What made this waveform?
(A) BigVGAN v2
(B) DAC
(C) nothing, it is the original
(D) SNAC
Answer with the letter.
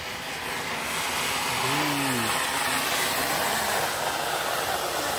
C